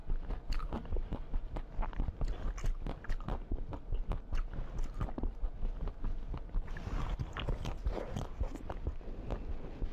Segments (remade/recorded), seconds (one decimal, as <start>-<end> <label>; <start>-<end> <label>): 0.0-9.9 recorded